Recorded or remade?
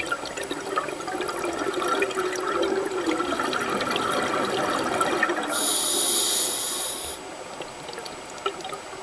recorded